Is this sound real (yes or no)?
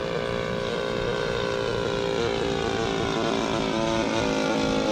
yes